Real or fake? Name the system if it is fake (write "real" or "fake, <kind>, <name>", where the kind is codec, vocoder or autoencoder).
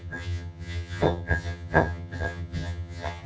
fake, vocoder, HiFi-GAN